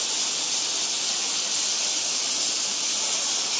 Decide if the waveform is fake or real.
real